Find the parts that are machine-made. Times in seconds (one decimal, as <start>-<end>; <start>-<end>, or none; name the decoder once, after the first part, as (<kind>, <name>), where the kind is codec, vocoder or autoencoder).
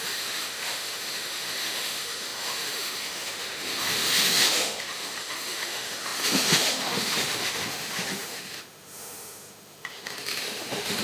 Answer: 0.0-11.0 (autoencoder, DAC-VAE)